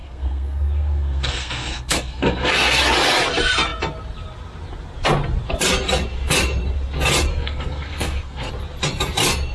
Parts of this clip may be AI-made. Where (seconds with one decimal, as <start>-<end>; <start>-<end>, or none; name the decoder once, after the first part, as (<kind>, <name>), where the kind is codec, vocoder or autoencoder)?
0.0-2.8 (codec, SNAC); 7.3-8.5